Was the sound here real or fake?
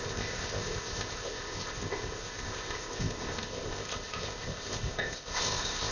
fake